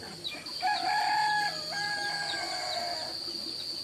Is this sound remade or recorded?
recorded